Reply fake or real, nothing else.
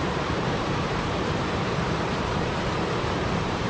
fake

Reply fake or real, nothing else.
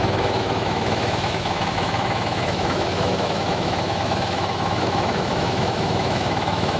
fake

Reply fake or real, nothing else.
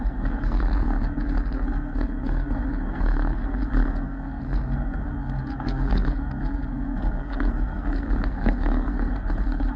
fake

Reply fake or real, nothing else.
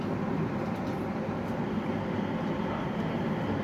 real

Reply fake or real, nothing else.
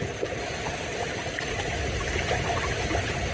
real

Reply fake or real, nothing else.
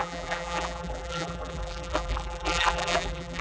fake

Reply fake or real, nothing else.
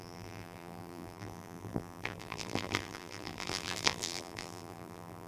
fake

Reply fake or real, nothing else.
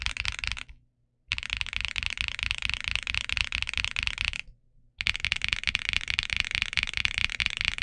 real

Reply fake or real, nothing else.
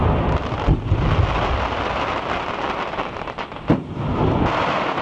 real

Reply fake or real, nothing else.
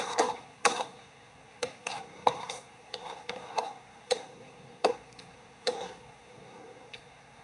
fake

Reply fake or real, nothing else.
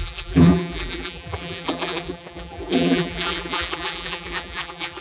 fake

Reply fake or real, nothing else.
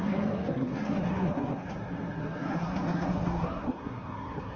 fake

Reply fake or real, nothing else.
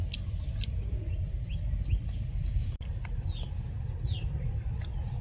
real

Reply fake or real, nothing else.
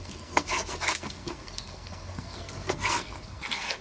fake